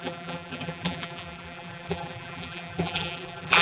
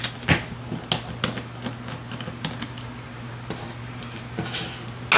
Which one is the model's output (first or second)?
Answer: first